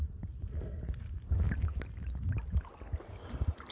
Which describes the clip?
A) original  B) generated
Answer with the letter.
A